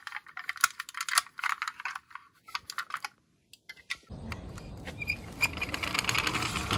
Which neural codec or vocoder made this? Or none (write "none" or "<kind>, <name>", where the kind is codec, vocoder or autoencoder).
none